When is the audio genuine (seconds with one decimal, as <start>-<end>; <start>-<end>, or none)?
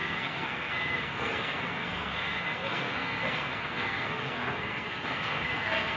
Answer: none